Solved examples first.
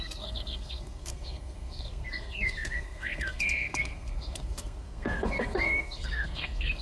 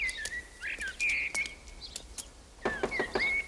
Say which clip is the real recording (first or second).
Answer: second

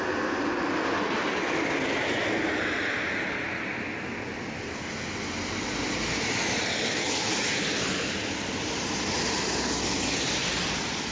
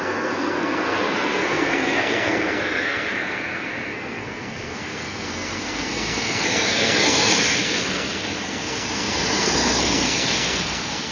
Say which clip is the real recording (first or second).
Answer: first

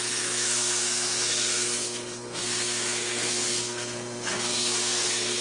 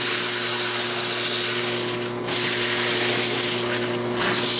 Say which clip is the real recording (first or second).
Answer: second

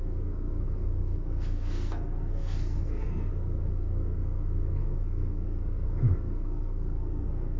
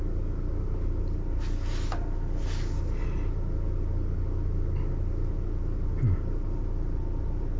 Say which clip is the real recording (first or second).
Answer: second